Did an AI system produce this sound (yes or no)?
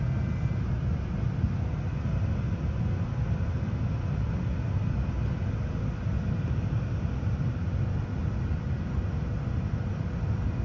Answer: no